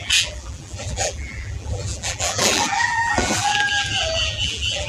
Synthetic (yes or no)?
yes